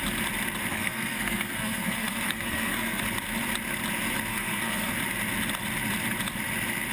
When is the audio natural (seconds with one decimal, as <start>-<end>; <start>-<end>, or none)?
0.0-0.7; 3.0-4.3; 4.9-6.9